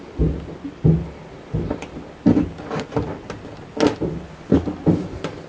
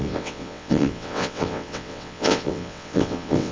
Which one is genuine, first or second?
first